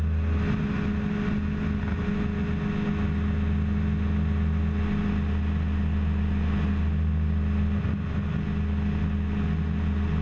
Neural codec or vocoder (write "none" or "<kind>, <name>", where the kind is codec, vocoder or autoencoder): none